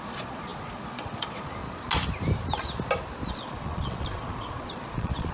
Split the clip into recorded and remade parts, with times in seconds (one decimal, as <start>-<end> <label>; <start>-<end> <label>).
0.0-1.6 remade; 1.6-3.3 recorded; 3.3-5.3 remade